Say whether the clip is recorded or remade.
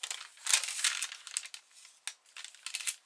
recorded